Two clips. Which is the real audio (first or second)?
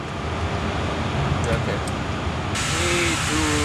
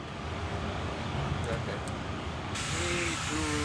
first